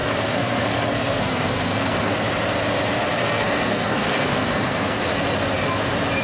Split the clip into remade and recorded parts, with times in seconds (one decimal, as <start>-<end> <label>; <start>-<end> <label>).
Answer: 0.0-2.1 remade; 2.1-3.2 recorded; 3.2-5.1 remade; 5.1-6.2 recorded